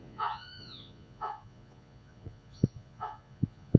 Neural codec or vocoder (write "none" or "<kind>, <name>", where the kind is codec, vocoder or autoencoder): vocoder, Vocos